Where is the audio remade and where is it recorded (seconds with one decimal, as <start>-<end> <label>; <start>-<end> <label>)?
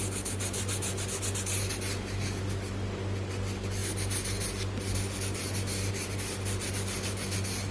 0.0-7.7 recorded